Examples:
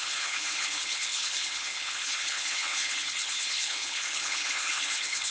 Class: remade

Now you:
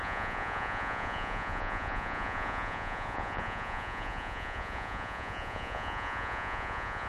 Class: remade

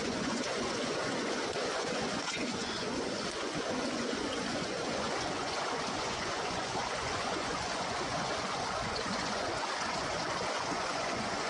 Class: remade